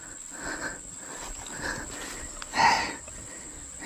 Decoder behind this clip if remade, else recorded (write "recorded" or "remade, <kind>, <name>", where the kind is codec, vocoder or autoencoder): recorded